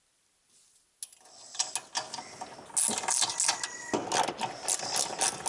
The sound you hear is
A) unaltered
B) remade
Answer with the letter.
A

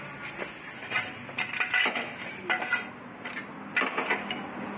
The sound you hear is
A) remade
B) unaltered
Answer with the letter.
B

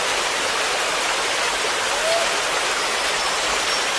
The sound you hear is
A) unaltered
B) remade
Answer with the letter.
A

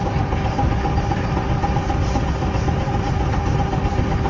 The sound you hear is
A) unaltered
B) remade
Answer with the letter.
A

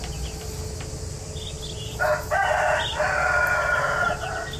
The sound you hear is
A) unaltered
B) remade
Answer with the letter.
A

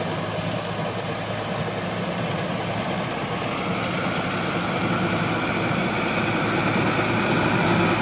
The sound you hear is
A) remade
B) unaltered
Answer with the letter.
B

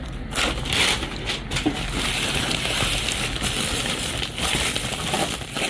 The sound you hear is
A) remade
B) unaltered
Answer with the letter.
B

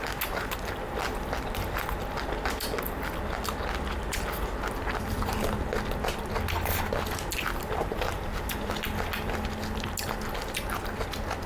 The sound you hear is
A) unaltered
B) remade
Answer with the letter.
A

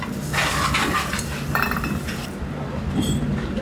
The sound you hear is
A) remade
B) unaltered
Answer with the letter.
A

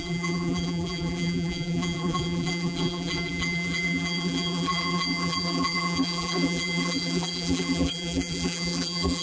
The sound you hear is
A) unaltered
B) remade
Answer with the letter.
B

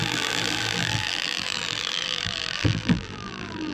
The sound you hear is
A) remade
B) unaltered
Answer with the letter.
A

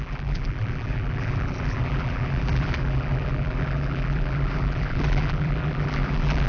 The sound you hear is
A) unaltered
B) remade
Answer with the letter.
B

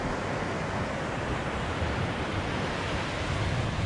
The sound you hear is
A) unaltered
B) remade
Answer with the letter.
A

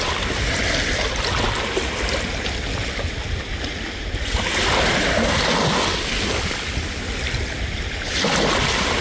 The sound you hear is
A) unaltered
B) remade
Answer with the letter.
A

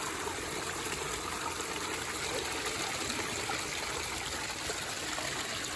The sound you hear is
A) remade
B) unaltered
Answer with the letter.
B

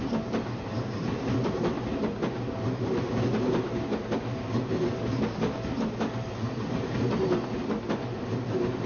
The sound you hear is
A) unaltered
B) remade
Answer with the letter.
A